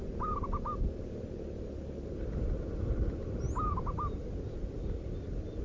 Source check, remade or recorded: recorded